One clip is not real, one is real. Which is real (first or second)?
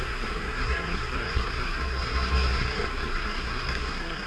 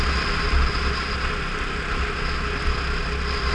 second